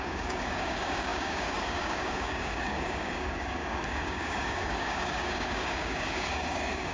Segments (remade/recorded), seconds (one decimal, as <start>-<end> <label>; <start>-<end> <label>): 0.0-6.9 remade